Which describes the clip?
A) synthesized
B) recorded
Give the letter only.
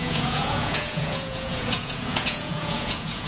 A